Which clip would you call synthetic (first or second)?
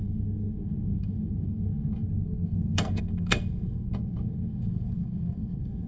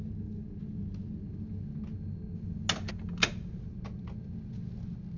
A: first